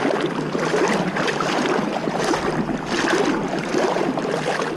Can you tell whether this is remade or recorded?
recorded